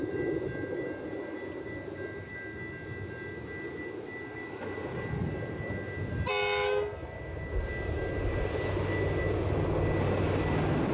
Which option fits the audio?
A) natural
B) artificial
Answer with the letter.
A